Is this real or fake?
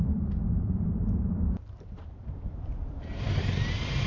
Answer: fake